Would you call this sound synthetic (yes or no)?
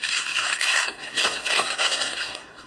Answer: yes